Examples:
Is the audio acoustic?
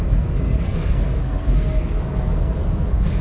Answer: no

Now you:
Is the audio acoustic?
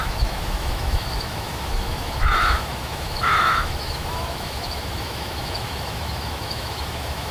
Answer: no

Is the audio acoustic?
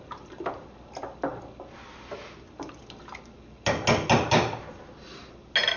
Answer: yes